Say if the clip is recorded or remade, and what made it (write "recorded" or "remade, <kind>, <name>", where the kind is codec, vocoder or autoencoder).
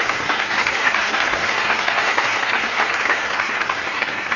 remade, codec, SNAC